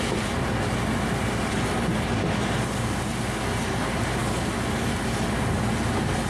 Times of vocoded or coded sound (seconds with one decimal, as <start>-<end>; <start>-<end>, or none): none